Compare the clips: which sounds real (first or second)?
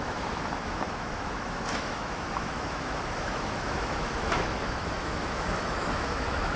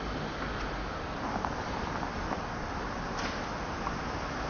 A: second